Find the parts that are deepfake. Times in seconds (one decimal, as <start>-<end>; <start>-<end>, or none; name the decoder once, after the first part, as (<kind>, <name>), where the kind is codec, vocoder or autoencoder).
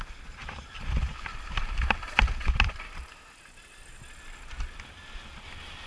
0.4-3.9 (vocoder, BigVGAN v2)